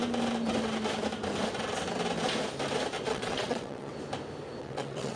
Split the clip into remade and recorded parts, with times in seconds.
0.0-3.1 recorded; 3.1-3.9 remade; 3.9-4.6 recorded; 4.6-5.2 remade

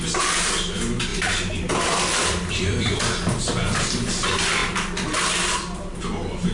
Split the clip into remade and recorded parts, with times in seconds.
0.0-1.1 recorded; 1.1-4.1 remade; 4.1-6.5 recorded

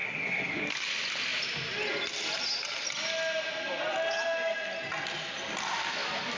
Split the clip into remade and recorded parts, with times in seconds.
0.0-0.6 remade; 0.6-6.4 recorded